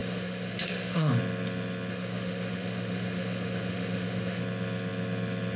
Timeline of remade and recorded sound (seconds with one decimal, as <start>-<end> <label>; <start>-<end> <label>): 0.0-1.1 remade; 1.1-1.9 recorded; 1.9-4.4 remade; 4.4-5.6 recorded